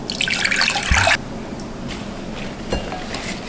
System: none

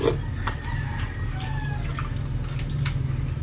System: none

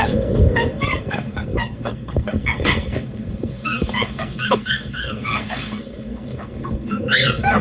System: codec, SNAC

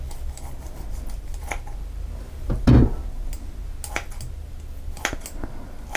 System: none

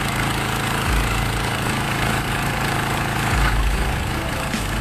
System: codec, DAC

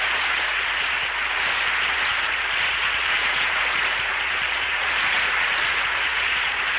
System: vocoder, Vocos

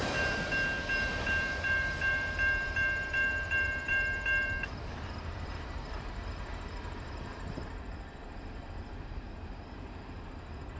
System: vocoder, BigVGAN v2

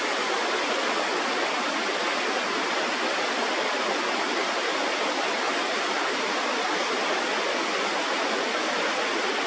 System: none